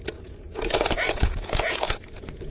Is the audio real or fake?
fake